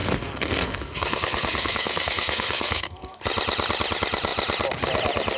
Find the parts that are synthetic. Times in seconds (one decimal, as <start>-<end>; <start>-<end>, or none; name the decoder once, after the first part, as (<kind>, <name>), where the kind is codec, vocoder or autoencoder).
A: 0.0-3.2 (codec, SNAC)